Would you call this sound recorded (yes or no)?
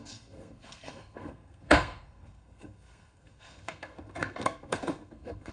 no